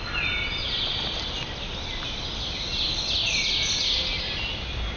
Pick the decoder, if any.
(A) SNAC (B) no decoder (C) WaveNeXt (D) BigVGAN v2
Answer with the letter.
B